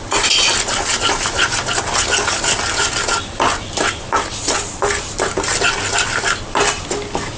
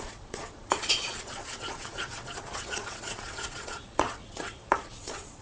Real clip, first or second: first